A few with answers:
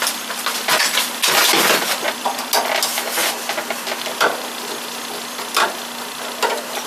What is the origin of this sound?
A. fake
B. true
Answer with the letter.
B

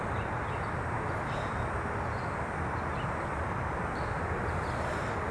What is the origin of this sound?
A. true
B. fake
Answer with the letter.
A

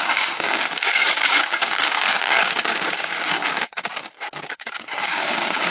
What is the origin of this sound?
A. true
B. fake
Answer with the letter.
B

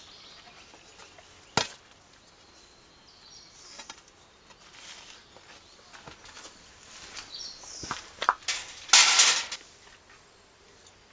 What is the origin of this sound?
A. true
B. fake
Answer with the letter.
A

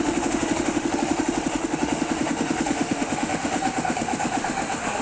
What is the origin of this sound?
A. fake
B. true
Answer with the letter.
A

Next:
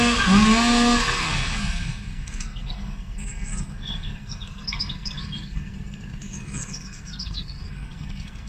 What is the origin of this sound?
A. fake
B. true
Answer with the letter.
A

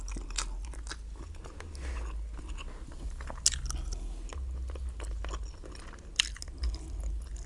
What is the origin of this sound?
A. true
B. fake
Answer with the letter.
A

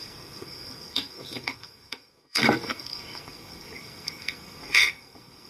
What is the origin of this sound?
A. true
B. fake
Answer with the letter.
B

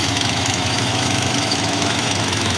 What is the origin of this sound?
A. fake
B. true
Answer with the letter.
A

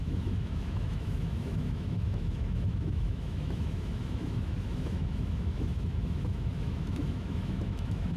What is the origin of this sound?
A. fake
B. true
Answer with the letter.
A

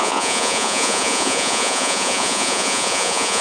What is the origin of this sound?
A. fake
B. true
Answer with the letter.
A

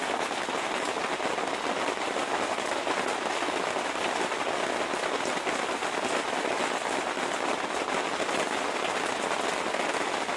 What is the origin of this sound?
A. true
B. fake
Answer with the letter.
A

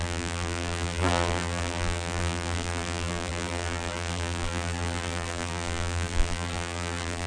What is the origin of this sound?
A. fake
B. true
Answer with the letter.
A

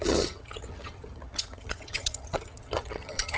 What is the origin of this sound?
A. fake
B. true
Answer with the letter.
A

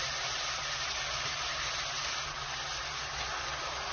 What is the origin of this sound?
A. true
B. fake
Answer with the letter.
A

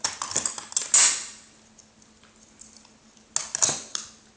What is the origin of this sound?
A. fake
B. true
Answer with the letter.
B